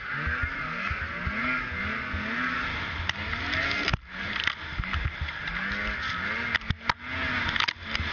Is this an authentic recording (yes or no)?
yes